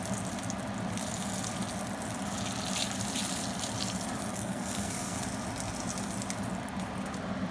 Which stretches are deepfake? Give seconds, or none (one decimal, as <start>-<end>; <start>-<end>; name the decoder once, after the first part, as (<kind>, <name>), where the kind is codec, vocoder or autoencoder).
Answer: 4.3-5.2 (codec, SNAC)